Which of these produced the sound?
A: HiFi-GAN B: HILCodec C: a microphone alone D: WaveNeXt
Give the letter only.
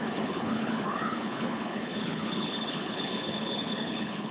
B